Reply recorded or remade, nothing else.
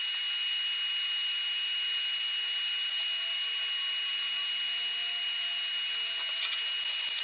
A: recorded